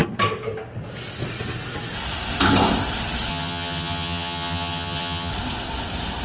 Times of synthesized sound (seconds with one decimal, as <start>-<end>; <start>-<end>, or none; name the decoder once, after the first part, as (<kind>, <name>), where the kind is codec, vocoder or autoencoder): 3.3-5.3 (vocoder, HiFi-GAN)